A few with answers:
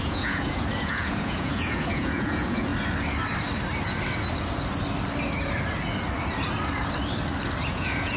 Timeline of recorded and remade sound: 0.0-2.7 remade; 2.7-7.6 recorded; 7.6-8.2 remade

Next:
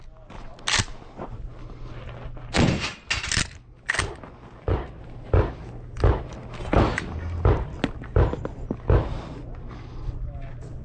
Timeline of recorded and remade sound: 0.0-10.8 recorded

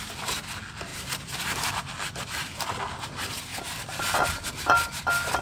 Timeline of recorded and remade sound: 0.0-5.4 recorded

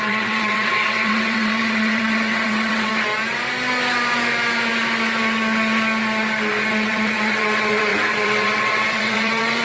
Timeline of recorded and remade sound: 0.0-2.9 remade; 2.9-6.7 recorded; 6.7-9.6 remade